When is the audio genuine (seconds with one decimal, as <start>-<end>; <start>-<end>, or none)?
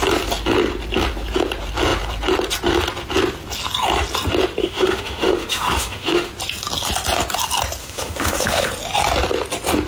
0.0-4.6; 6.3-7.8; 8.7-9.9